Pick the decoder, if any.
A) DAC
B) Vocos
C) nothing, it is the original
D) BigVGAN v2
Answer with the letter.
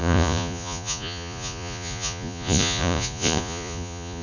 B